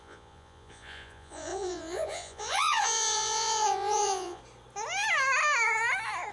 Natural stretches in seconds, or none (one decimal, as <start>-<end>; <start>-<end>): 4.4-6.3